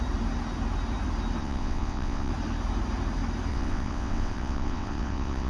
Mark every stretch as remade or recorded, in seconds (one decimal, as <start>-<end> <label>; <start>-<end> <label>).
0.0-1.4 recorded; 1.4-2.3 remade; 2.3-3.5 recorded; 3.5-5.5 remade